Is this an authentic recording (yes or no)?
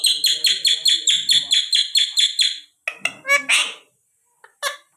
yes